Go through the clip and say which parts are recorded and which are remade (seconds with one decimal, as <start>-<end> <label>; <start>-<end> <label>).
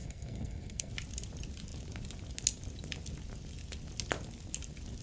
0.0-0.9 remade; 0.9-5.0 recorded